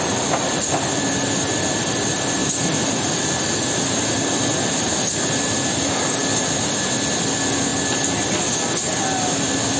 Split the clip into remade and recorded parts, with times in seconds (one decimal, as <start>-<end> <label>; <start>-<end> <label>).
0.0-9.8 recorded